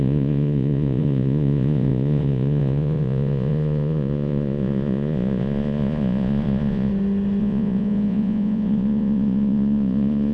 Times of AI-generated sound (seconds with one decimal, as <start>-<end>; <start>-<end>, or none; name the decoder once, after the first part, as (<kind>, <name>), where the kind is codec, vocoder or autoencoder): 0.0-6.9 (vocoder, Vocos); 7.4-10.3